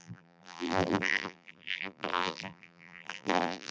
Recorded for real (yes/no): no